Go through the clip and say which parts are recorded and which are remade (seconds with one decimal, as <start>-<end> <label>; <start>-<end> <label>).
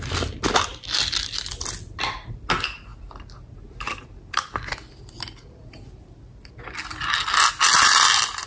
0.0-8.5 recorded